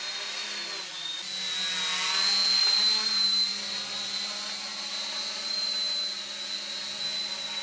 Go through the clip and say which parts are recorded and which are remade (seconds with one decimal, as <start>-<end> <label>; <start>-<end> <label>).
0.0-7.6 recorded